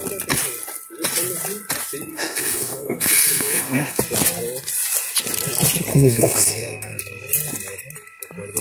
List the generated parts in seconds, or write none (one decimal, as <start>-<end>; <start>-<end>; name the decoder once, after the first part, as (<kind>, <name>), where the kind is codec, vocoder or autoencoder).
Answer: 2.1-4.0 (codec, SNAC); 5.9-7.0